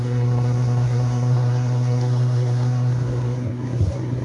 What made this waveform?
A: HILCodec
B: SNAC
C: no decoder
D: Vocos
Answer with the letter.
B